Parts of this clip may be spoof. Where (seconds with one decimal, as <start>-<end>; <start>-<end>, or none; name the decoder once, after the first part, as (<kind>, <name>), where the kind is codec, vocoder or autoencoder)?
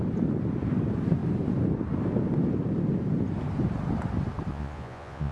4.5-5.3 (vocoder, Vocos)